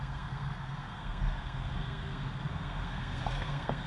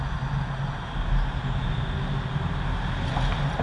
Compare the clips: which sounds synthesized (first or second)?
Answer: first